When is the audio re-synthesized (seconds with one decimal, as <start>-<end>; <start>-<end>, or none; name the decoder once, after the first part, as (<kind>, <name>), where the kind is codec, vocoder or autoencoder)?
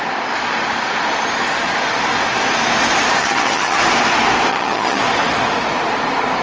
3.2-3.8 (vocoder, HiFi-GAN); 4.5-5.0